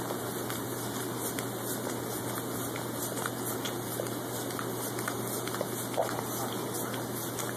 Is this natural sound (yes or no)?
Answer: yes